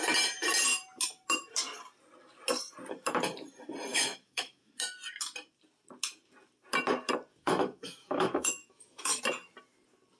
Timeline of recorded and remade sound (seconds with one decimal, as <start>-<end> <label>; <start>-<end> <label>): 0.0-3.9 recorded; 3.9-4.7 remade; 4.7-7.3 recorded; 7.3-9.2 remade; 9.2-10.2 recorded